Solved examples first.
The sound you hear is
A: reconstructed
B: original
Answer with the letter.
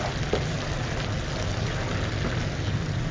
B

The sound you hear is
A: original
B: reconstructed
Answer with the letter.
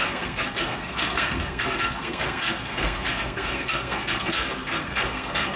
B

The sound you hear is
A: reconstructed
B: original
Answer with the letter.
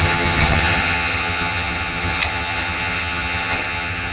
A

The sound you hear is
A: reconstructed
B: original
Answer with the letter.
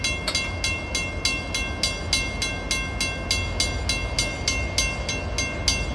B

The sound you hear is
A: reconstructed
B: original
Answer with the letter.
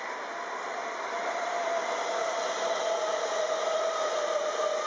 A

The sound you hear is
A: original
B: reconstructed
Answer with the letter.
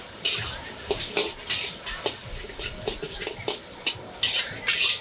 A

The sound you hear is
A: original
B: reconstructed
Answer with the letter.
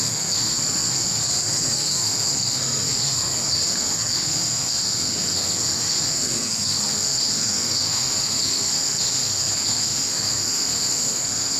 B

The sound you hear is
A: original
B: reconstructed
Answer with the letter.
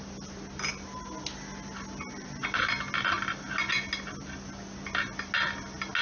A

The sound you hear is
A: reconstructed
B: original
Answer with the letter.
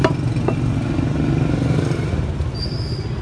B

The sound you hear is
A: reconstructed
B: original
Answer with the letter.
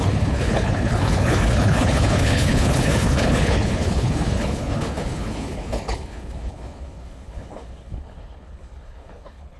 A